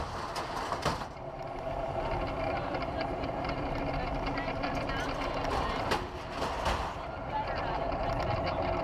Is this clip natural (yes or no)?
no